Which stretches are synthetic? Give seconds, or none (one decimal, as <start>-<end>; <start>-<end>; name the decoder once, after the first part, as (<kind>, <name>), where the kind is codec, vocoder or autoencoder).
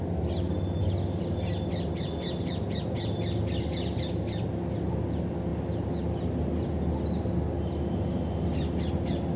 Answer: none